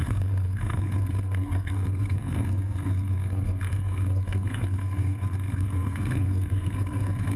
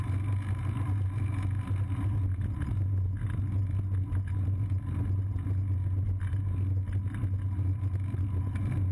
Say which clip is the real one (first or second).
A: second